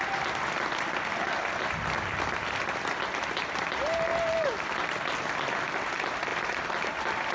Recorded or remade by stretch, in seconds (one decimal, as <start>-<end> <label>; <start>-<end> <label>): 0.0-7.3 recorded